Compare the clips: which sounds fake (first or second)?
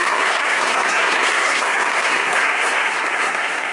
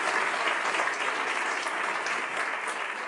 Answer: first